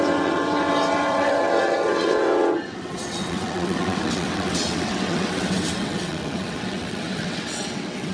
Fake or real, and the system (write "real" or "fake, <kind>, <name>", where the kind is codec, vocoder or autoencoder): fake, vocoder, WaveNeXt